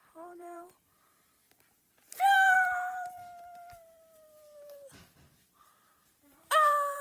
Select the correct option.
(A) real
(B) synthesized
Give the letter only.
B